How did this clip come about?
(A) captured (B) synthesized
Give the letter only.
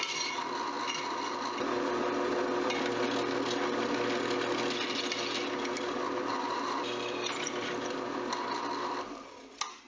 A